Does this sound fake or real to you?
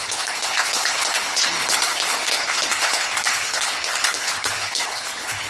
fake